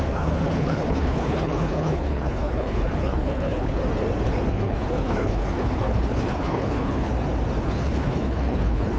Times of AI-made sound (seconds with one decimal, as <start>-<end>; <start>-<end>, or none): 0.0-3.8; 4.5-7.1; 7.6-9.0